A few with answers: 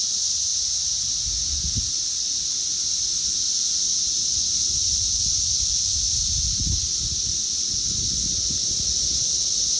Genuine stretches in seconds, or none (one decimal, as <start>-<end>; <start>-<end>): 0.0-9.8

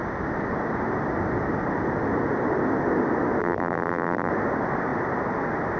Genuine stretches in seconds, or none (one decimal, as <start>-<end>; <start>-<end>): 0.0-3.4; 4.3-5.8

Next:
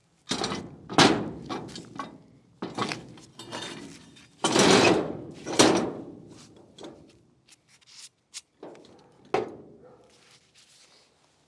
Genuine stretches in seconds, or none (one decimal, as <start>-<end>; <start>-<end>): 0.0-4.1; 8.5-11.5

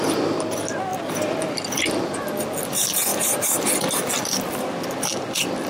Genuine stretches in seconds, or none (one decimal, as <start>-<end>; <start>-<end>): 0.0-3.1; 3.8-5.7

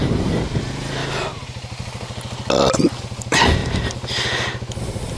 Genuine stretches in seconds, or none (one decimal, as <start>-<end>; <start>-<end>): 1.0-3.0; 3.6-4.8